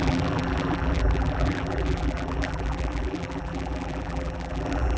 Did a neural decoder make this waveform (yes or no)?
yes